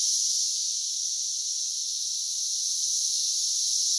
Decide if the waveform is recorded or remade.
recorded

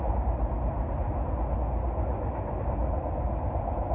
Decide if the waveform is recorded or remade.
recorded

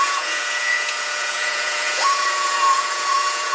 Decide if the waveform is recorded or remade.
remade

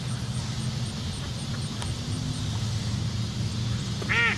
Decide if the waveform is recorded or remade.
recorded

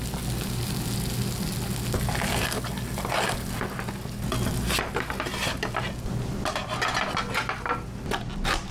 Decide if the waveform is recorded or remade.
recorded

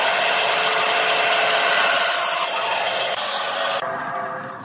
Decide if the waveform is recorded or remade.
recorded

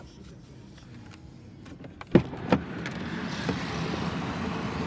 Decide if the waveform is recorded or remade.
recorded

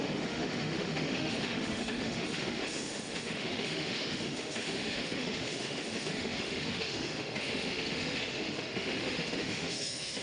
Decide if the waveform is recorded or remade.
remade